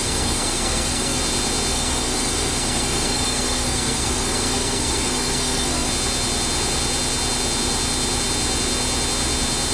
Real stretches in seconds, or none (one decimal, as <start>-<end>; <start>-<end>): 1.2-1.7; 5.9-9.7